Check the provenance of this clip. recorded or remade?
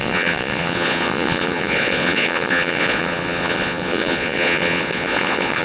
remade